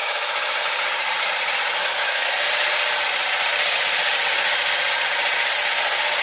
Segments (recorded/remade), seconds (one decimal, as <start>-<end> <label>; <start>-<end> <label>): 0.0-0.6 remade; 0.6-1.8 recorded; 1.8-2.3 remade; 2.3-6.2 recorded